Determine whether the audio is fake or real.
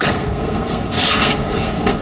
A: fake